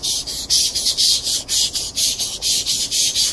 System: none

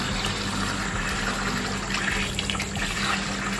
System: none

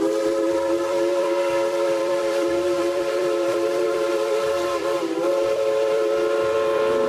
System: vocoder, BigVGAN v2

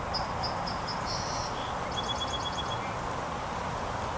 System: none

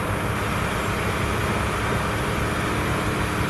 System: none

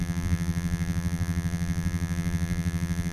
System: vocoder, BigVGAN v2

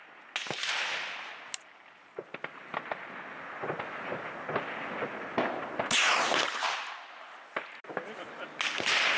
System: none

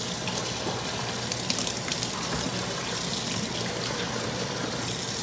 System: none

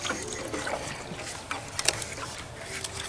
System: none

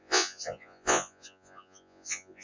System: vocoder, Vocos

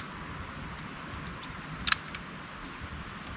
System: none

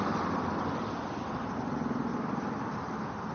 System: none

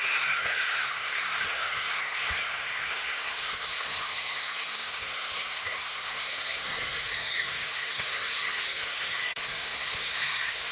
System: codec, SNAC